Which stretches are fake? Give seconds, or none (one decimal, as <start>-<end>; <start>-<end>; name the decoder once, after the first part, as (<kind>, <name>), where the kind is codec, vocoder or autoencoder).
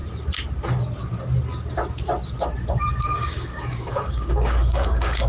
2.7-5.3 (codec, DAC)